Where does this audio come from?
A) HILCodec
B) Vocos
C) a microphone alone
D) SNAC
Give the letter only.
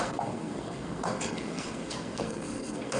D